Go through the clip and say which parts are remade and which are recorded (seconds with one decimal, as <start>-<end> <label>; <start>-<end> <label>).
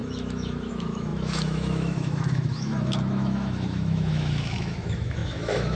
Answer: 0.0-5.8 remade